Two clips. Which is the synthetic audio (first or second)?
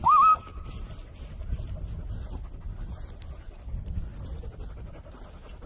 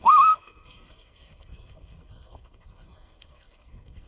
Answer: second